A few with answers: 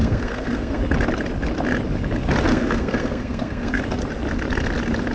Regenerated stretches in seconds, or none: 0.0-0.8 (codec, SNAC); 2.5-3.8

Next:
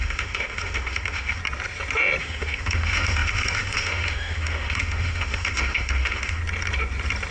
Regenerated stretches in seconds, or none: 0.0-1.4 (autoencoder, DAC-VAE); 2.2-6.4

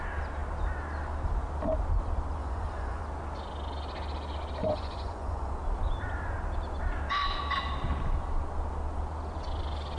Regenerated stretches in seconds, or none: 2.4-3.0 (vocoder, Vocos); 4.6-5.5

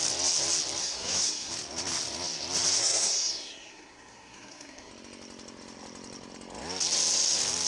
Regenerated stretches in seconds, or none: 0.8-1.5 (codec, SNAC); 2.8-4.9